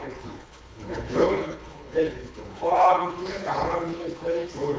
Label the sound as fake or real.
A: fake